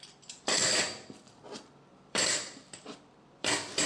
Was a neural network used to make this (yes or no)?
yes